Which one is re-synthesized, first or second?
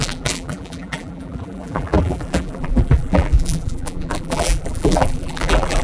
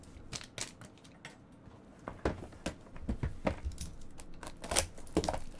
first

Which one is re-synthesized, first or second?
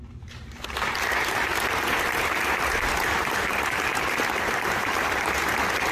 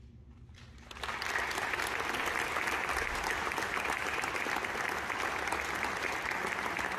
first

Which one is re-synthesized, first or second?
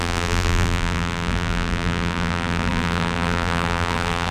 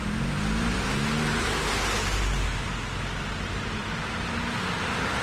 first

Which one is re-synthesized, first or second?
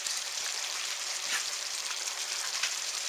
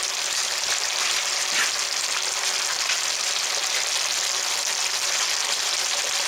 first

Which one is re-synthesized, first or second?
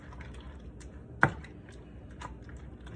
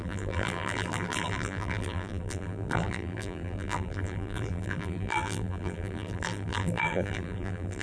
second